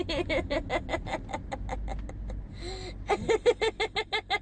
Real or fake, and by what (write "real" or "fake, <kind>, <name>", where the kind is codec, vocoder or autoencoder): real